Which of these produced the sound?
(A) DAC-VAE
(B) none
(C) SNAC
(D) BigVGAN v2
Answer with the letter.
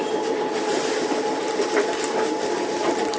B